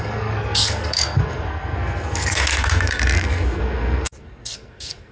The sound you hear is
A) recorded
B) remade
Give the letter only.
B